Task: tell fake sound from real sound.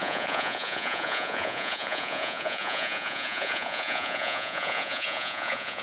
fake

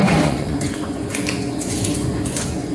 fake